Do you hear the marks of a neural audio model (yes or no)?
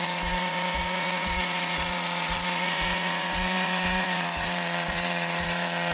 yes